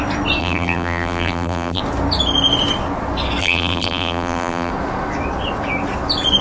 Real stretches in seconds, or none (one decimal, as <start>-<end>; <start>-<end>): 0.0-0.4; 1.8-3.4; 4.7-6.4